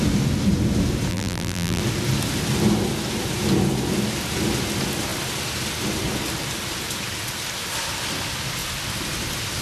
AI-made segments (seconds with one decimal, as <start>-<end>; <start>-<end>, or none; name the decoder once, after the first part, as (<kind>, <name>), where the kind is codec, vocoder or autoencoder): 1.1-1.8 (vocoder, BigVGAN v2)